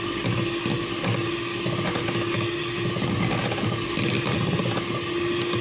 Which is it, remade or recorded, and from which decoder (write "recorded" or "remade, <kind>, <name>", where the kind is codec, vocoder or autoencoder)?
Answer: recorded